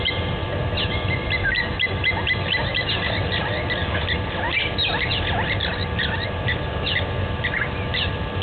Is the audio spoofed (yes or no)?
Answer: no